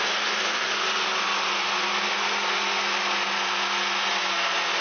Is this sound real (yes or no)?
yes